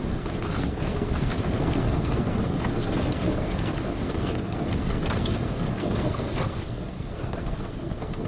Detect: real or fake fake